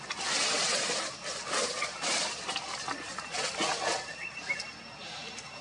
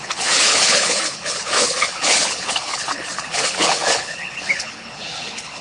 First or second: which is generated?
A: second